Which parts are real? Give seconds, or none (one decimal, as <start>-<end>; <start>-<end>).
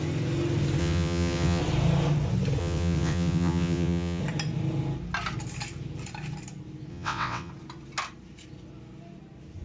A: 0.0-0.8; 1.6-2.6; 4.2-6.9; 7.5-9.6